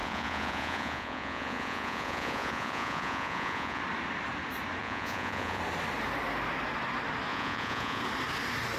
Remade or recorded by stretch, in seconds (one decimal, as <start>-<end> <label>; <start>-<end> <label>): 0.0-3.8 remade; 3.8-4.8 recorded; 4.8-5.6 remade; 5.6-7.3 recorded; 7.3-8.0 remade; 8.0-8.8 recorded